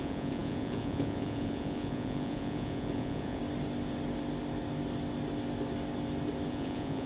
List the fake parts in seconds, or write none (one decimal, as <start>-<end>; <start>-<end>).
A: 0.0-3.4; 6.5-7.1